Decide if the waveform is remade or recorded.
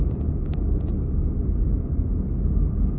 recorded